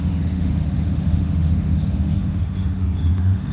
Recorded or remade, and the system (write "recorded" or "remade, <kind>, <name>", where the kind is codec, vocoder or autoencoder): remade, autoencoder, DAC-VAE